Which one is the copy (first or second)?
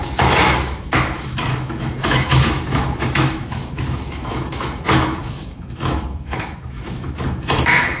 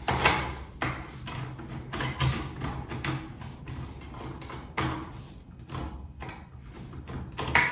first